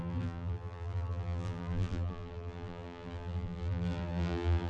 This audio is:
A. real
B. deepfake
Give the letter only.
B